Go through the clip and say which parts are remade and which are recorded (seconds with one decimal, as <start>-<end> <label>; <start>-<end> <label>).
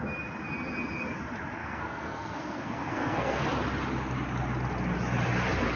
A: 0.0-1.6 recorded; 1.6-3.4 remade; 3.4-5.8 recorded